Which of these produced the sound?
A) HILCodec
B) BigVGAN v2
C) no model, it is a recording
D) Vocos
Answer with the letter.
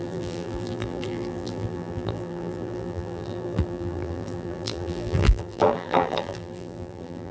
B